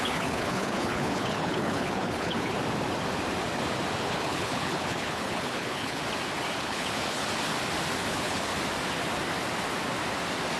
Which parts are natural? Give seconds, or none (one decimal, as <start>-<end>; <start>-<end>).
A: 2.5-4.0; 6.0-6.6; 7.2-8.1; 8.5-10.6